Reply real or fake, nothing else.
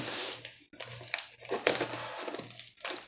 real